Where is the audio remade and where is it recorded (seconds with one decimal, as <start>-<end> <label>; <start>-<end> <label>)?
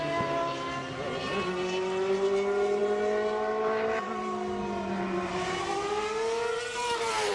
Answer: 0.0-7.3 recorded